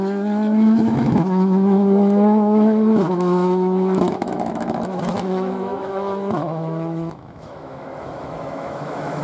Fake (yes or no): yes